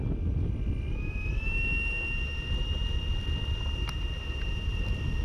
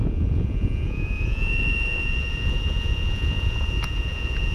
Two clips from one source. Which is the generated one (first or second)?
second